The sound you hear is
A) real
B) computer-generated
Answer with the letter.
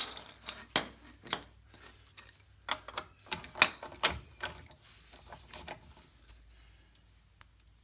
A